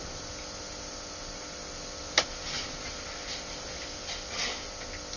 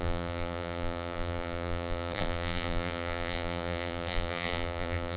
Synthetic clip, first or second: second